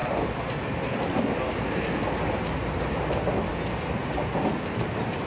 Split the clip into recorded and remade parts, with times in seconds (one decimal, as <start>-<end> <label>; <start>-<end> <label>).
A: 0.0-5.3 recorded